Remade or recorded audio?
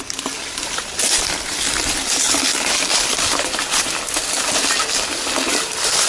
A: recorded